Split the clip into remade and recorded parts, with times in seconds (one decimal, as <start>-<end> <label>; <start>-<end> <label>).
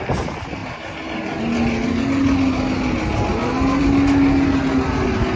0.0-5.4 recorded